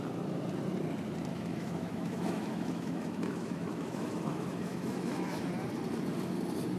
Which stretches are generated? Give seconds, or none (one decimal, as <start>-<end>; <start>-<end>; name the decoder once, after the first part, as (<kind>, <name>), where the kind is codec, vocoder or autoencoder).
1.3-5.4 (autoencoder, DAC-VAE)

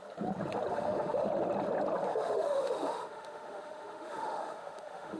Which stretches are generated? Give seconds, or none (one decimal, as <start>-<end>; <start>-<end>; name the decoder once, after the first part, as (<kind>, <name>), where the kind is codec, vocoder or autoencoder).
0.7-1.3 (autoencoder, DAC-VAE); 2.1-5.2